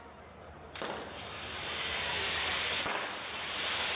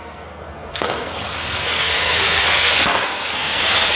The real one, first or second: first